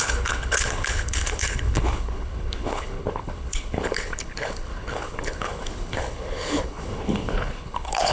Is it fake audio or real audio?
fake